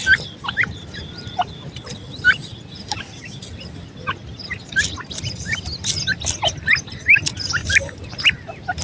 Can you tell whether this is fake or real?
real